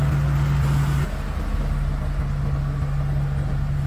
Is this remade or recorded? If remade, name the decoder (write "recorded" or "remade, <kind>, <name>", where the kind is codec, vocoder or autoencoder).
recorded